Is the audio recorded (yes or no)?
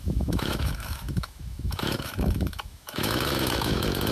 no